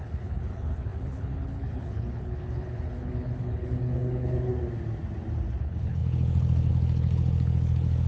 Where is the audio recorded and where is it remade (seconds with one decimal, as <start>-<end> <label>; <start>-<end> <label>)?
0.0-4.5 remade; 4.5-5.6 recorded; 5.6-8.1 remade